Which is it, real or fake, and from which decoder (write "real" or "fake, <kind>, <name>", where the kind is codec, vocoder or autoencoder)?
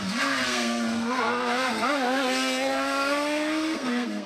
fake, codec, SNAC